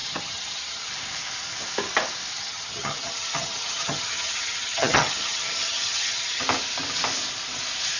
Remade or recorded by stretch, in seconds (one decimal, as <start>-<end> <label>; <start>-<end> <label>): 0.0-0.9 remade; 0.9-2.3 recorded; 2.3-6.4 remade; 6.4-8.0 recorded